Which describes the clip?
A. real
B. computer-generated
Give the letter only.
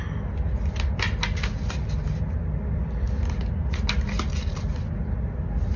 A